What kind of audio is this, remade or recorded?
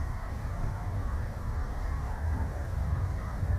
remade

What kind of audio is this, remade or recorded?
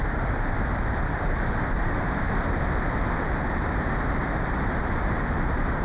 recorded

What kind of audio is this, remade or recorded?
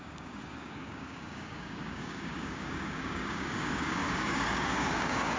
remade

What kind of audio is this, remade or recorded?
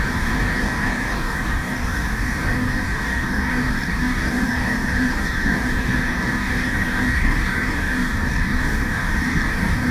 remade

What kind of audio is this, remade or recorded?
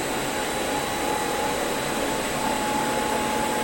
recorded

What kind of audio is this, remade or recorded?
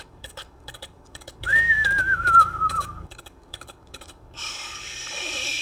remade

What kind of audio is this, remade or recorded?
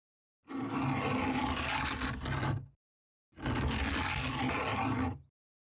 recorded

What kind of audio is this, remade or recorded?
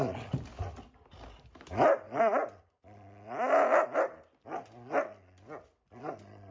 recorded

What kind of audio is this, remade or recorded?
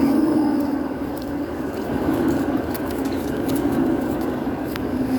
remade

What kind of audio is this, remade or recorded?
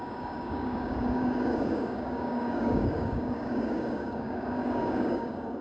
remade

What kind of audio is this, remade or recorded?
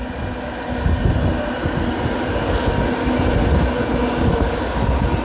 recorded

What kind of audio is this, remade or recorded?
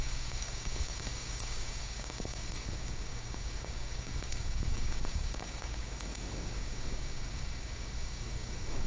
remade